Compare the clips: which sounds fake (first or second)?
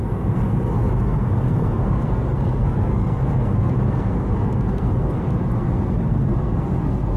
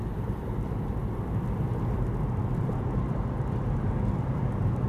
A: first